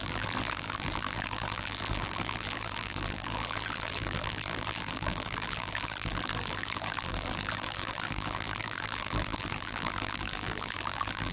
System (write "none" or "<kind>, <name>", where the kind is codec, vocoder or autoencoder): vocoder, BigVGAN v2